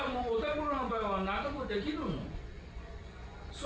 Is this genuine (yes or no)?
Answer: no